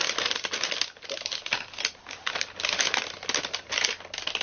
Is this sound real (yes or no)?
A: yes